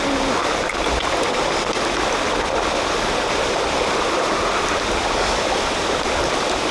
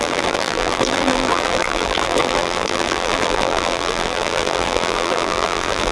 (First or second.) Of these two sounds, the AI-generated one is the second